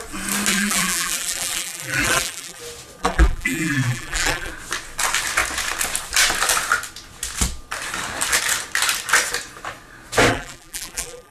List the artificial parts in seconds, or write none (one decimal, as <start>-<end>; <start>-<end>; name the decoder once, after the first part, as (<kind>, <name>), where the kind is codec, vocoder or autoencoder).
0.5-2.6 (vocoder, BigVGAN v2); 3.0-4.5; 10.3-11.3